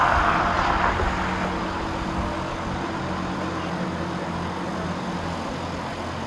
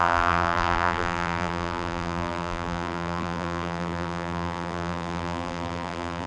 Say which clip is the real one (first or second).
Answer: first